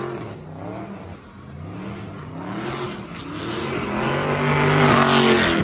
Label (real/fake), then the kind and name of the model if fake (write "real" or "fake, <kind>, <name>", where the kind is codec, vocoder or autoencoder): real